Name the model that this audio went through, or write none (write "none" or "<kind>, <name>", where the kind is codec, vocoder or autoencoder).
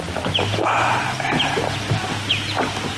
none